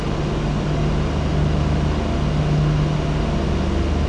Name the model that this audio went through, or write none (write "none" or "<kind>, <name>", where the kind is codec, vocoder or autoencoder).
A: none